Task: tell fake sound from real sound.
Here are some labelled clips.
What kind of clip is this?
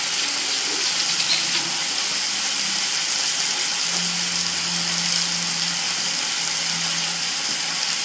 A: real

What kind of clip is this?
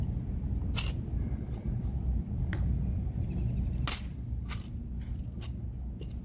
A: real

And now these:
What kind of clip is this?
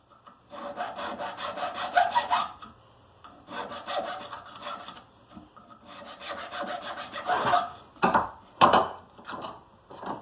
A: real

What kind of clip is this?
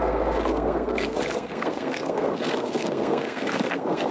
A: fake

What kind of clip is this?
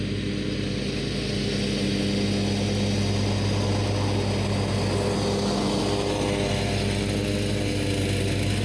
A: real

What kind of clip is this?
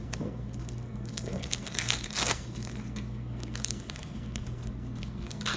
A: fake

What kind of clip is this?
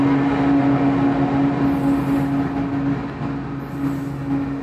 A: real